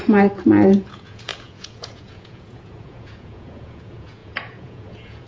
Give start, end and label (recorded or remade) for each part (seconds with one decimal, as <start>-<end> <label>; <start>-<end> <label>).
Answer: 0.0-5.3 remade